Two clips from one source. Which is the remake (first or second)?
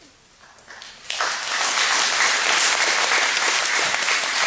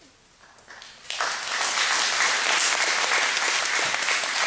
first